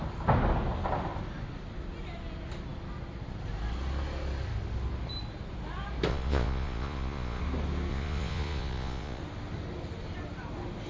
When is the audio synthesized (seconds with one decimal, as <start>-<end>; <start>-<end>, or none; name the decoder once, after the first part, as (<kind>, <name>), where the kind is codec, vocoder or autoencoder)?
6.1-7.4 (vocoder, Vocos); 7.9-9.2